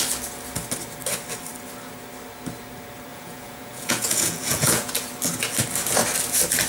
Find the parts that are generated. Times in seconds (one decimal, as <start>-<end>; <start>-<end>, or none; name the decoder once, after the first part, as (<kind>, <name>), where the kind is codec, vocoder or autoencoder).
3.1-4.9 (vocoder, Vocos)